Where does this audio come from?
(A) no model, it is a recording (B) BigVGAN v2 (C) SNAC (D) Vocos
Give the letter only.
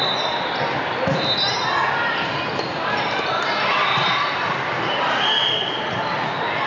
B